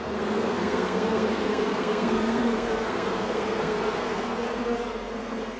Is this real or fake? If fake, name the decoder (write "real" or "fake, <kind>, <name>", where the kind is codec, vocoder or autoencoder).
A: fake, codec, SNAC